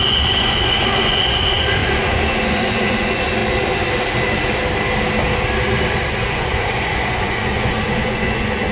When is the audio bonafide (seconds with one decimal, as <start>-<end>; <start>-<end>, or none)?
3.4-6.1